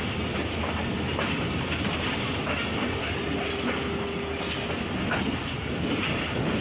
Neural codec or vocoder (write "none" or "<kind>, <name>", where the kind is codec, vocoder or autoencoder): none